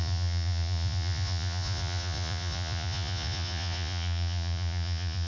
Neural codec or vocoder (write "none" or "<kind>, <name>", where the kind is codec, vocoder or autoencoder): vocoder, Vocos